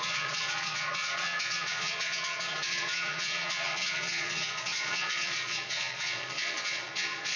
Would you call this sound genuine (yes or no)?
no